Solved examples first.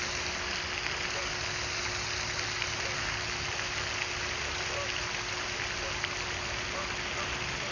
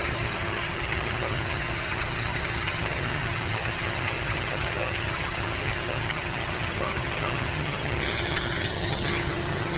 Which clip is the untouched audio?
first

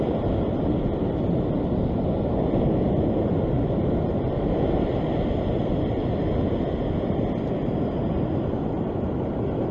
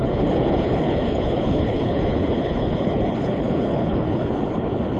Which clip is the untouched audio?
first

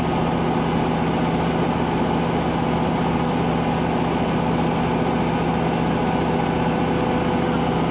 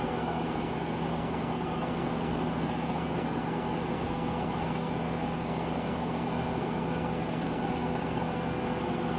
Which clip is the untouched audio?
first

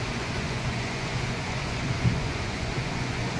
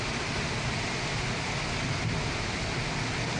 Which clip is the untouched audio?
second